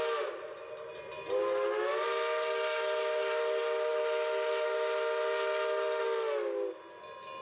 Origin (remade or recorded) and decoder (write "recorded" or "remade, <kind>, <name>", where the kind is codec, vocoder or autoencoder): recorded